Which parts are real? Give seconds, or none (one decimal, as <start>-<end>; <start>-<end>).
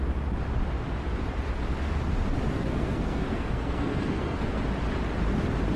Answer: 0.0-2.5; 4.6-5.8